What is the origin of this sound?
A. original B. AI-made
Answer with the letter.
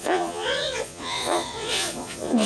B